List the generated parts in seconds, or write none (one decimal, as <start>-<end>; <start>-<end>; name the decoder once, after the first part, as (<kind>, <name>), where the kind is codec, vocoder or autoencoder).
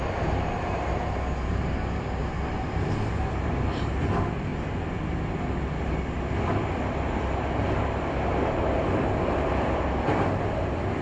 2.2-4.0 (vocoder, BigVGAN v2)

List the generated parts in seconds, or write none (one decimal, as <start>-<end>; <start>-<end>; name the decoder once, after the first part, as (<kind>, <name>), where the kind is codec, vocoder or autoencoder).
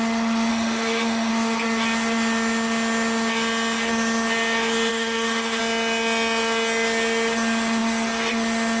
0.5-1.3 (autoencoder, DAC-VAE); 4.9-5.6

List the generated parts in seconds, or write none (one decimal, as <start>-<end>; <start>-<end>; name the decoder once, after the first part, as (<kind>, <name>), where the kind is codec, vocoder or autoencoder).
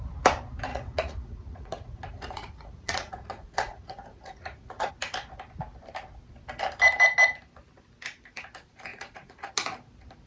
0.7-4.9 (vocoder, Vocos); 8.9-9.5